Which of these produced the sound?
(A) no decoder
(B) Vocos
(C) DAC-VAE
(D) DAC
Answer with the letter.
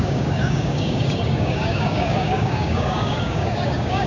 D